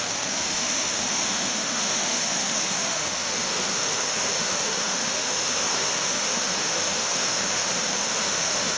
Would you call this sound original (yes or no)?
no